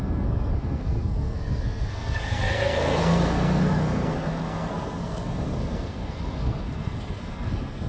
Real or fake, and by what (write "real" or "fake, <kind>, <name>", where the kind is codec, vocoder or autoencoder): fake, codec, SNAC